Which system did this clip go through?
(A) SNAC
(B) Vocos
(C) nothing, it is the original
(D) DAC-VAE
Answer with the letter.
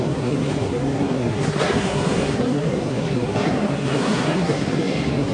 A